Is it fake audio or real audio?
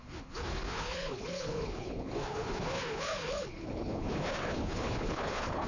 fake